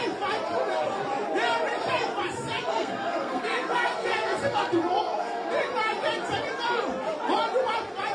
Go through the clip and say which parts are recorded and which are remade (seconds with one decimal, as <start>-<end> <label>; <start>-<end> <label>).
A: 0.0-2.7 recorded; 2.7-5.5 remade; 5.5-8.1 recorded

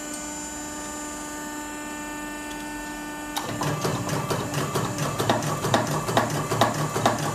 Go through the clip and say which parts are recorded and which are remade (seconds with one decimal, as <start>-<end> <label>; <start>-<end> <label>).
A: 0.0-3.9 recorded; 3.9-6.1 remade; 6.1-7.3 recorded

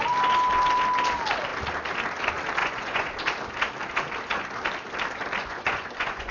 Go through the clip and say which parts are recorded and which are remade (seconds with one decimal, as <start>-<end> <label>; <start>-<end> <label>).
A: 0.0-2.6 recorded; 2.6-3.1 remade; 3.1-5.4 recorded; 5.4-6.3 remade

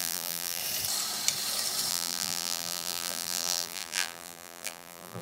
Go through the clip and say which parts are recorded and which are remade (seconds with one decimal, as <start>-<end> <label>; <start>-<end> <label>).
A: 0.0-0.6 remade; 0.6-1.9 recorded; 1.9-5.2 remade